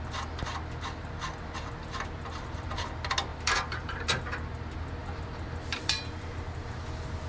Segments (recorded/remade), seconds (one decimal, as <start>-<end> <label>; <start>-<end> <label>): 0.0-3.3 recorded; 3.3-4.2 remade; 4.2-5.0 recorded; 5.0-6.0 remade; 6.0-7.3 recorded